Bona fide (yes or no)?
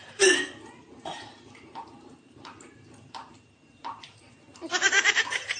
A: no